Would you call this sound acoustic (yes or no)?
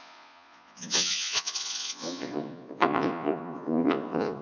no